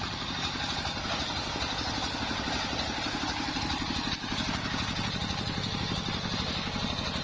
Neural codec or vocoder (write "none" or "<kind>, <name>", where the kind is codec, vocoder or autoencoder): none